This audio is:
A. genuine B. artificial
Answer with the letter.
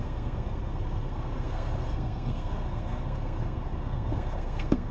B